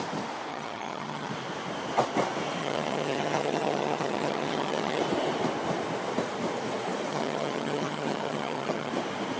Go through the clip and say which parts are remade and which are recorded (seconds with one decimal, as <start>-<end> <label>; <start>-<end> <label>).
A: 0.0-0.5 recorded; 0.5-1.3 remade; 1.3-2.6 recorded; 2.6-5.0 remade; 5.0-7.1 recorded; 7.1-8.9 remade; 8.9-9.4 recorded

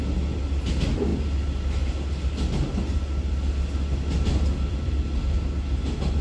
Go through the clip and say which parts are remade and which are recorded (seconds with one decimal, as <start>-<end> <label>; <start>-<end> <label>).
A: 0.0-6.2 recorded

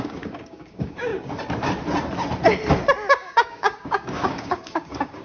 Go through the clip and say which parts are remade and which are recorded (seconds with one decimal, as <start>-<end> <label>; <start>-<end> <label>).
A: 0.0-1.1 remade; 1.1-3.1 recorded; 3.1-5.2 remade

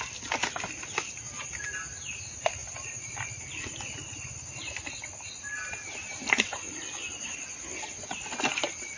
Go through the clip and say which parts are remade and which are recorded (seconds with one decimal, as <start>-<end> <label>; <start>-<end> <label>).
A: 0.0-9.0 recorded

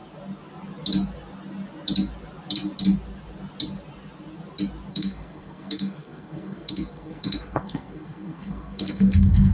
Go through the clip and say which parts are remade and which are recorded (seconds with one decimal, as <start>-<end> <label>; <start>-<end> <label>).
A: 0.0-4.9 recorded; 4.9-9.5 remade

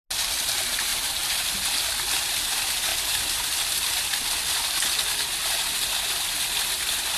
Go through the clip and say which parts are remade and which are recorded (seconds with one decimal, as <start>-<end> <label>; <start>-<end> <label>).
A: 0.0-0.9 recorded; 0.9-1.5 remade; 1.5-7.2 recorded

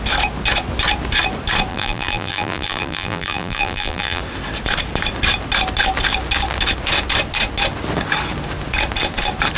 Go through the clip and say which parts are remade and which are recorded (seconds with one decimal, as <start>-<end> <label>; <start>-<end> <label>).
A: 0.0-1.7 recorded; 1.7-4.2 remade; 4.2-9.6 recorded